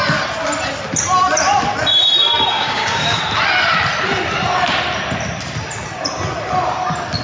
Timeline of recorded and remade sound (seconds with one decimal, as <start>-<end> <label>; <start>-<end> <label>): 0.0-2.5 recorded; 2.5-3.2 remade; 3.2-7.2 recorded